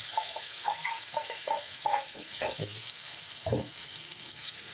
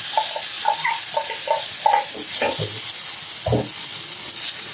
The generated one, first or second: first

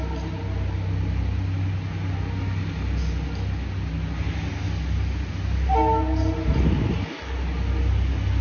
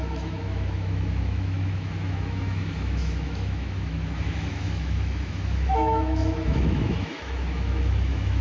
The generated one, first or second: second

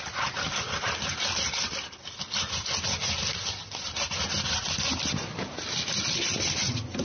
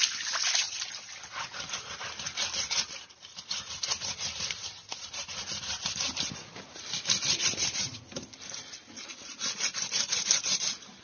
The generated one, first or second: second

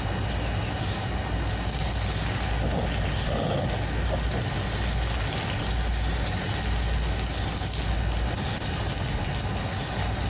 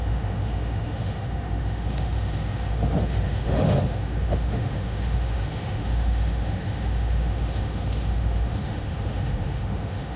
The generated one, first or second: second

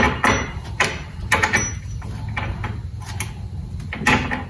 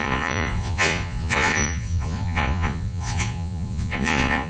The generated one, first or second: second